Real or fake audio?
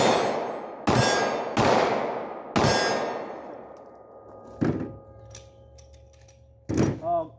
real